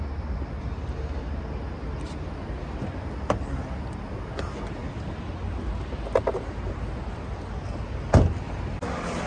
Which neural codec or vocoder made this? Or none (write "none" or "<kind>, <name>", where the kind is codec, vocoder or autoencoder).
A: none